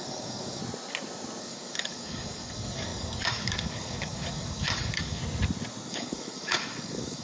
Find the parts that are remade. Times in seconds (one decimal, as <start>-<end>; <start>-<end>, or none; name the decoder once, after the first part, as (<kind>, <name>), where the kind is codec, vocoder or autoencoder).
0.0-0.6 (codec, DAC); 1.4-5.2; 5.9-7.2